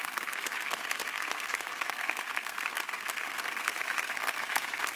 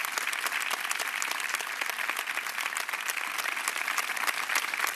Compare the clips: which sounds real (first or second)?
second